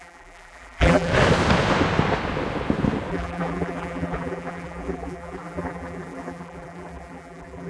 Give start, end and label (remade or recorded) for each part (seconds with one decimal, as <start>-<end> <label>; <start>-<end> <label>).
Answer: 0.0-1.1 remade; 1.1-3.1 recorded; 3.1-7.7 remade